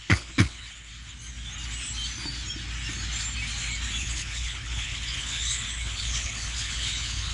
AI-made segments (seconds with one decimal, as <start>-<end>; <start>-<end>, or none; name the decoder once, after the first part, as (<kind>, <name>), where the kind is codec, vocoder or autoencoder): 0.0-0.9 (codec, HILCodec); 4.0-7.3